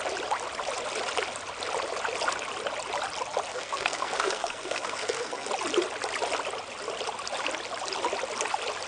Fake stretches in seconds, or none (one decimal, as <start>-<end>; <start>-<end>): 3.5-5.5